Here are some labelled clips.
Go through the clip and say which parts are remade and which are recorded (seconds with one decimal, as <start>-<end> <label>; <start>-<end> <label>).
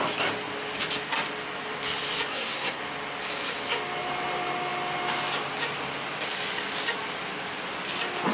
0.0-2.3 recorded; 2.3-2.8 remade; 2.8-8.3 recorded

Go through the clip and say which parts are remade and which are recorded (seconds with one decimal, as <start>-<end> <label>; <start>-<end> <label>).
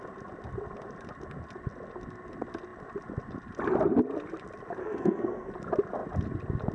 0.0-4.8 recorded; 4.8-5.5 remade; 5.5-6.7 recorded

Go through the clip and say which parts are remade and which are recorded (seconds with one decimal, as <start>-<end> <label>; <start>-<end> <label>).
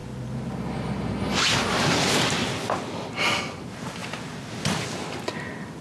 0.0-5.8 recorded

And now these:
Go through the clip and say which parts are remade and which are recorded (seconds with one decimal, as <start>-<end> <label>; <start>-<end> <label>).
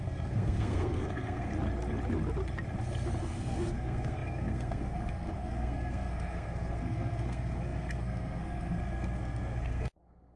0.0-1.5 remade; 1.5-3.2 recorded; 3.2-10.4 remade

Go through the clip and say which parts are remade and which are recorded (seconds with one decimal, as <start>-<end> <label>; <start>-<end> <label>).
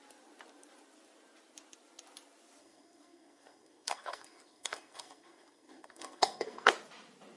0.0-2.6 recorded; 2.6-6.7 remade; 6.7-7.4 recorded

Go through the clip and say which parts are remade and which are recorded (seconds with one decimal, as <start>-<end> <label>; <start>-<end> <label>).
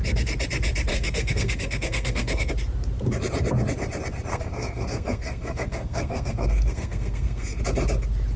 0.0-0.9 recorded; 0.9-2.5 remade; 2.5-4.3 recorded; 4.3-7.6 remade; 7.6-8.4 recorded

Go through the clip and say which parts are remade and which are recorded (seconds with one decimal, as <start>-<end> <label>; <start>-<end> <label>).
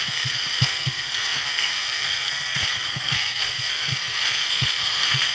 0.0-5.3 remade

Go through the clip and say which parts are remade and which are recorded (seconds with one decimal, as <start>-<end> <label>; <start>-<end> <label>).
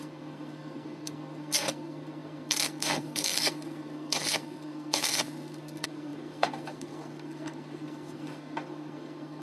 0.0-9.4 remade